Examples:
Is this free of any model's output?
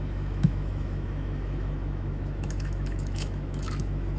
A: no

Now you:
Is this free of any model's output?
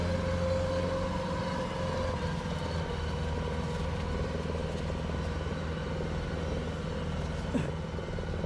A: yes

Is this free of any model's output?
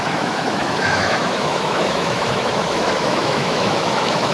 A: no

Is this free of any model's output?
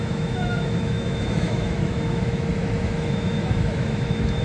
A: no